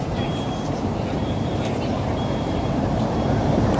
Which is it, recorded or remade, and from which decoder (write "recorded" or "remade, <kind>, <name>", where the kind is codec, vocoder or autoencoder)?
remade, vocoder, BigVGAN v2